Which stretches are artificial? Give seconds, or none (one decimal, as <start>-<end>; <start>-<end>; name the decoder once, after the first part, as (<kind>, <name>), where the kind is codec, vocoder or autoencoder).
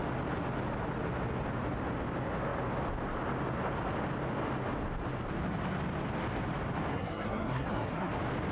6.9-8.1 (codec, SNAC)